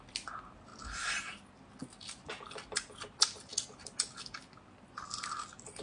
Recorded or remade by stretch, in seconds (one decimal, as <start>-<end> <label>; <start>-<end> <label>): 0.0-5.8 recorded